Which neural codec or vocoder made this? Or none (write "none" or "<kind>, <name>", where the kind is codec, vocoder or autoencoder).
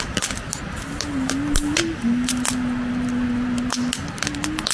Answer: none